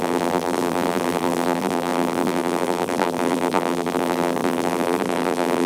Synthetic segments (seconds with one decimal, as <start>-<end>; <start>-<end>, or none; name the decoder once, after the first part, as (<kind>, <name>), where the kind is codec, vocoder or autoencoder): 0.0-5.7 (vocoder, BigVGAN v2)